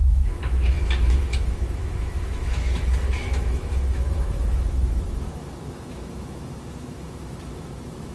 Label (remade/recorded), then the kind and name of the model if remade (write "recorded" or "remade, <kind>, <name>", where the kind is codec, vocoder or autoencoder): remade, autoencoder, DAC-VAE